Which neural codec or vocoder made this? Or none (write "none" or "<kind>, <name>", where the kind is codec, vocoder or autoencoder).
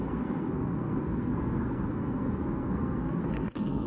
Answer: codec, SNAC